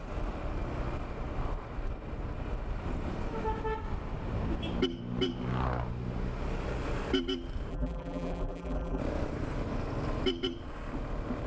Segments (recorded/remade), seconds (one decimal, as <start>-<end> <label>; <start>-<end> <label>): 0.0-7.7 recorded; 7.7-9.0 remade; 9.0-11.5 recorded